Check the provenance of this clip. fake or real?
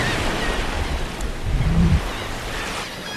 real